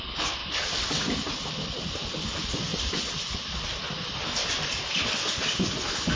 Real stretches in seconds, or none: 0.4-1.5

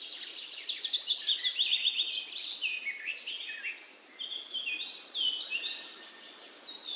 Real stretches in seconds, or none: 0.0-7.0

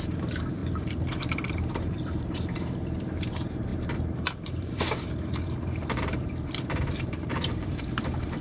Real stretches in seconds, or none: none

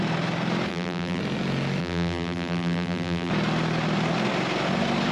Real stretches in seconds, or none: 0.0-0.7; 1.2-1.8; 3.3-5.1

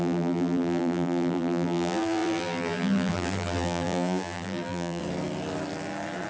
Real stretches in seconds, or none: 5.0-6.3